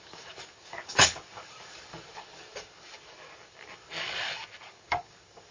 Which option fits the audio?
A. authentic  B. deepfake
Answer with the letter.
B